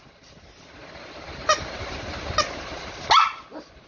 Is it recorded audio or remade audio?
recorded